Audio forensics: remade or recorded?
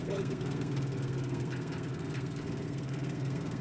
remade